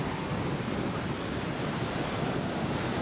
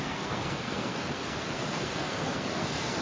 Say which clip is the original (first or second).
first